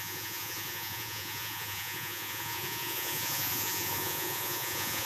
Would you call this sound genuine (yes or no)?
no